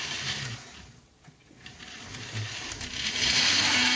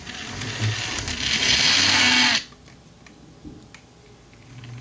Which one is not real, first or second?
first